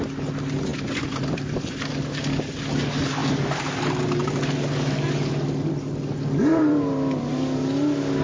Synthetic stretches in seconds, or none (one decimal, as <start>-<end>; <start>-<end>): 0.7-1.7; 6.5-7.3